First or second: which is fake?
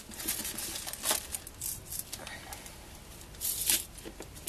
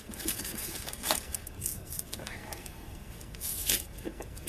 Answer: second